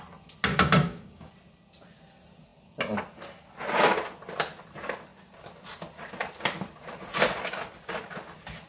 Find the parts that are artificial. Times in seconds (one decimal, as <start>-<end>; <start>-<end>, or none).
0.5-1.3